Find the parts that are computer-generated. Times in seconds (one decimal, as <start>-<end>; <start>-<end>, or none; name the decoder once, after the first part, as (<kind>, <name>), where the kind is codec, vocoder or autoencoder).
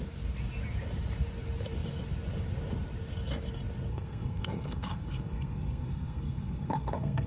3.9-7.3 (codec, SNAC)